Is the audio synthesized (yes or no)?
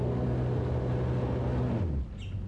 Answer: no